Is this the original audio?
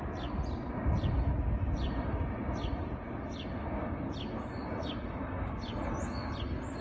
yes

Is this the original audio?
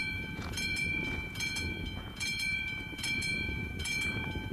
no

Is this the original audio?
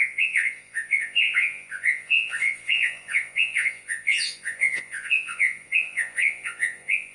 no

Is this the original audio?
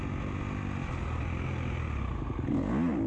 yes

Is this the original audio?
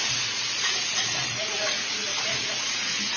no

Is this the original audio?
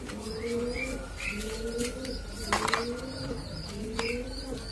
yes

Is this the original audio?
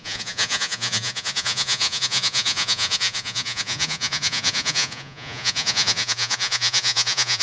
no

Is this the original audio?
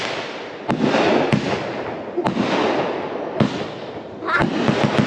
yes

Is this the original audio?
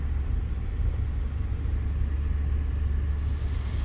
yes